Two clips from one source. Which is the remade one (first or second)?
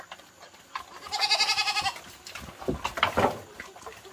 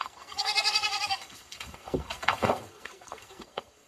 second